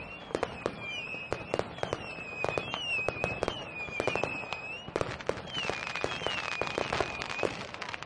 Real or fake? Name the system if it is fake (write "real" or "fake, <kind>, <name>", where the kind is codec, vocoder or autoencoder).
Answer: real